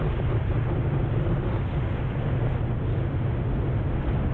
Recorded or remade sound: recorded